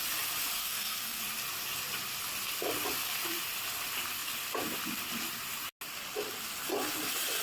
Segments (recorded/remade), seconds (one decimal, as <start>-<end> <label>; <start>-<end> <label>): 0.0-0.6 recorded; 0.6-1.2 remade; 1.2-7.4 recorded